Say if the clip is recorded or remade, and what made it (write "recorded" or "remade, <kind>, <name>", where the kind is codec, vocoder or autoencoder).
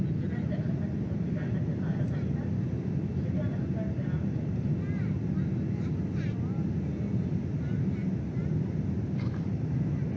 recorded